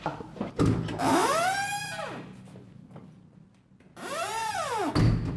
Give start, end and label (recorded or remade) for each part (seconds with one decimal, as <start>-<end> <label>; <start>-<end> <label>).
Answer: 0.0-5.4 recorded

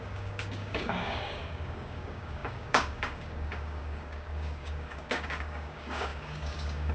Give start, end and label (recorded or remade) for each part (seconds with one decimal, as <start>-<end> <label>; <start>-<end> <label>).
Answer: 0.0-6.9 remade

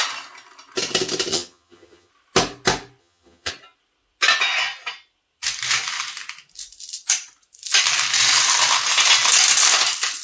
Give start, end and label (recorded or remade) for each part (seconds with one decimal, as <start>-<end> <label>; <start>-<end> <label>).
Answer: 0.0-1.3 recorded; 1.3-2.1 remade; 2.1-3.0 recorded; 3.0-3.5 remade; 3.5-10.2 recorded

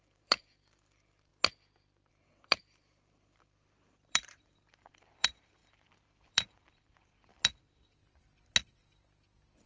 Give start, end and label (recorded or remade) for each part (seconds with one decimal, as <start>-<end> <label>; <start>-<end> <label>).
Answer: 0.0-1.3 remade; 1.3-2.1 recorded; 2.1-7.3 remade; 7.3-9.7 recorded

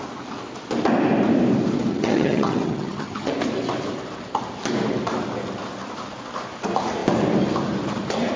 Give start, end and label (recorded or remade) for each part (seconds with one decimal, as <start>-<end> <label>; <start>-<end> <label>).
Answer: 0.0-1.9 recorded; 1.9-3.3 remade; 3.3-8.4 recorded

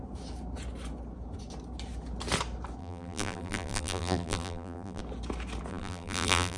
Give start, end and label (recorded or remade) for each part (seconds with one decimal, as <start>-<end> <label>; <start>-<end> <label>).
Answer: 0.0-2.8 recorded; 2.8-5.0 remade; 5.0-5.7 recorded; 5.7-6.6 remade

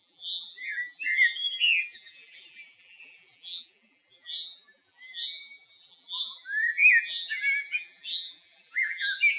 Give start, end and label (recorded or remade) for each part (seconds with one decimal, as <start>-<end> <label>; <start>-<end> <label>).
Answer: 0.0-9.4 remade

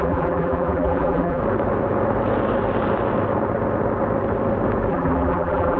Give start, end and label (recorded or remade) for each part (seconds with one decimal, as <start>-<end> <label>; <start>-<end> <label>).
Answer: 0.0-1.4 remade; 1.4-4.9 recorded; 4.9-5.8 remade